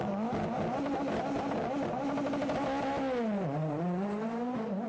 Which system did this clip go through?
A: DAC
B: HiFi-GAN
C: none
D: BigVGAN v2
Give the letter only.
C